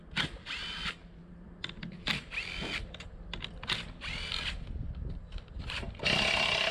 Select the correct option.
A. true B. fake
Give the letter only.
A